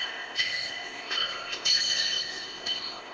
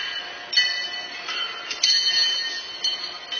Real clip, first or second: second